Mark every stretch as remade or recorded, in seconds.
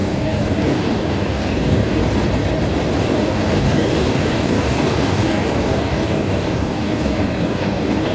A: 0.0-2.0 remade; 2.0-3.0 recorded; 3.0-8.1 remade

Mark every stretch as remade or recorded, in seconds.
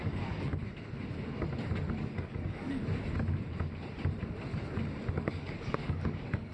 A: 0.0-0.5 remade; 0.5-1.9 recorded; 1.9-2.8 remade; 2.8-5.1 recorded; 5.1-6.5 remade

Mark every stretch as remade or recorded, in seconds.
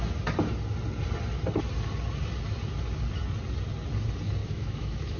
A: 0.0-4.4 recorded; 4.4-5.2 remade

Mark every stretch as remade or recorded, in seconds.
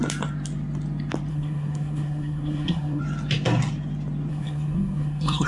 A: 0.0-1.3 recorded; 1.3-3.0 remade; 3.0-4.3 recorded; 4.3-5.5 remade